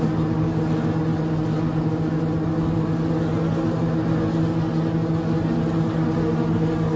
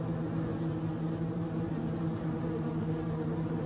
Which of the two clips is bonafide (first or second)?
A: first